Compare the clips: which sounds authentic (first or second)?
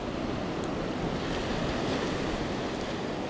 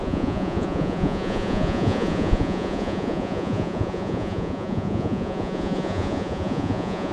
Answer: first